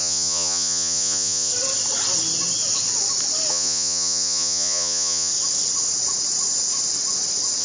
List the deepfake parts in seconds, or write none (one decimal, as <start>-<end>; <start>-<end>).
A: 0.0-1.5; 3.5-5.3